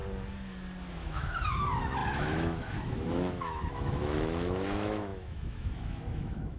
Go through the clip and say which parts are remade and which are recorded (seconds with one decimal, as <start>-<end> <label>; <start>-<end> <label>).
0.0-0.9 recorded; 0.9-6.6 remade